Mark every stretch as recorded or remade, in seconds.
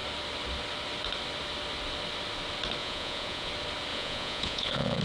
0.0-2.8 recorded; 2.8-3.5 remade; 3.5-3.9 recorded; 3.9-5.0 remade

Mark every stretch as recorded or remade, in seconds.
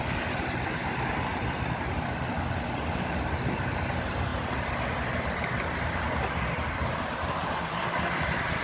0.0-8.6 recorded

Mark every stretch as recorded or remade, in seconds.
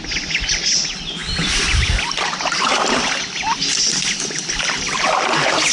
0.0-1.2 recorded; 1.2-3.2 remade; 3.2-3.7 recorded; 3.7-4.7 remade; 4.7-5.7 recorded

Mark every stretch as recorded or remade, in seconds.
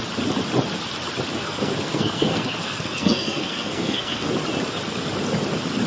0.0-1.4 recorded; 1.4-4.3 remade; 4.3-5.9 recorded